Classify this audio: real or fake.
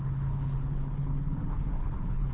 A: fake